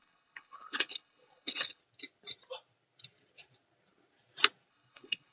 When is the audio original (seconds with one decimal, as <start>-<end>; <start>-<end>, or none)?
1.8-4.7